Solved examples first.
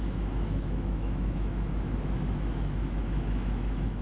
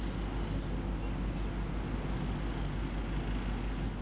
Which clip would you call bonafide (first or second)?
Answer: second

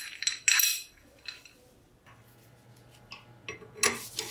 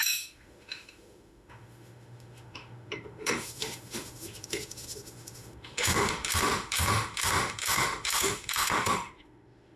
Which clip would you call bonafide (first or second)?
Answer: first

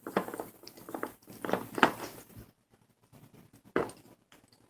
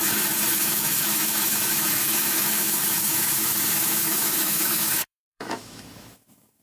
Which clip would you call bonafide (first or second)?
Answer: first